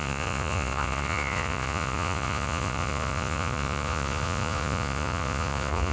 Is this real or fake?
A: fake